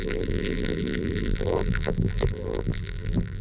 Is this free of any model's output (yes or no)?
no